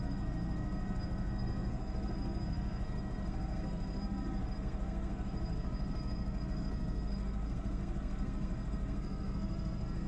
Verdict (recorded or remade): remade